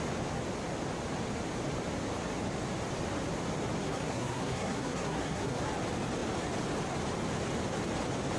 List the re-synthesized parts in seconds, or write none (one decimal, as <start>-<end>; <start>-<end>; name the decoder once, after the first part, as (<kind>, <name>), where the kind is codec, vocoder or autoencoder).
3.8-5.6 (codec, SNAC)